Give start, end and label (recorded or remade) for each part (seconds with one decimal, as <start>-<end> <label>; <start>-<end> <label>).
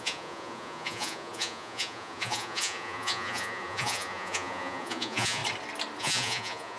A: 0.0-5.4 remade; 5.4-6.0 recorded; 6.0-6.8 remade